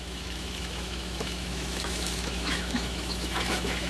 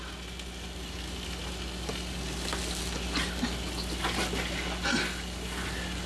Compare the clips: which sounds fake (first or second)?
first